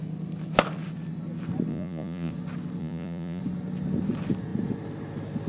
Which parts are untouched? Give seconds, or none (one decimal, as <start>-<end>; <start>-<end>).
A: 0.0-1.7; 2.3-2.8; 3.4-5.5